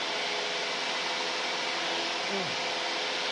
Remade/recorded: recorded